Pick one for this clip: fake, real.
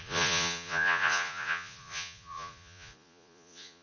fake